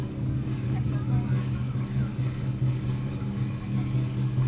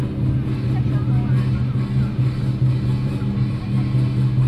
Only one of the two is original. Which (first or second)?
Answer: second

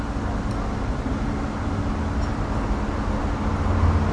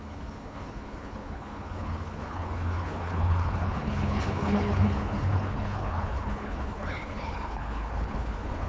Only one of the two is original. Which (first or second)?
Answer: first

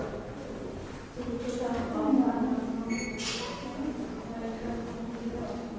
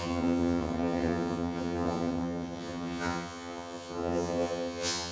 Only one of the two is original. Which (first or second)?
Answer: first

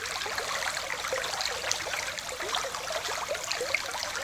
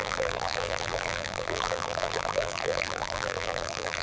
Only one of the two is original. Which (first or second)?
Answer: first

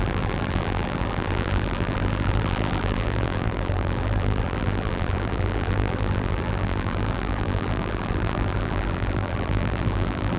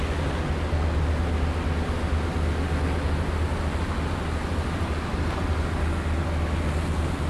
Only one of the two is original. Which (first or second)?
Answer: second